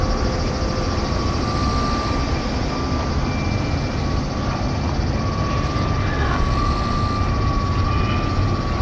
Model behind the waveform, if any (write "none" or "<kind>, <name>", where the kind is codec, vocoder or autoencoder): none